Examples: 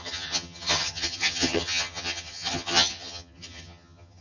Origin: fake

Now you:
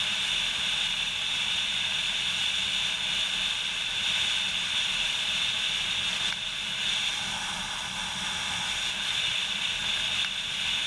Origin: real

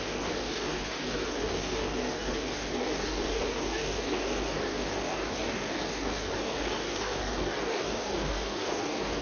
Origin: fake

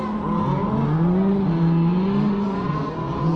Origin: real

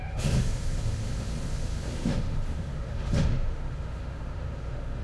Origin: fake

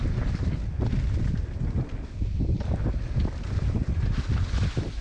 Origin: real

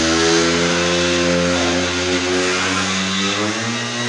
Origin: real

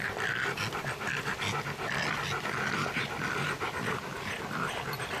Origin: real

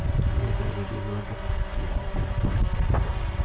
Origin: real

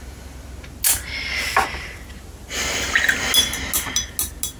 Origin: real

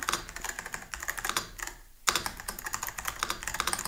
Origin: real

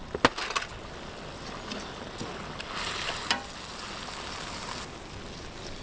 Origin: real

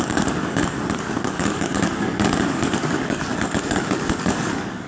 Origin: fake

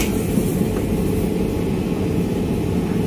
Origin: real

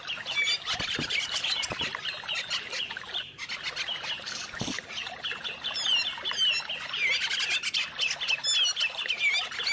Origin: real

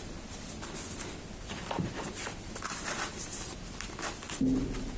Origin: fake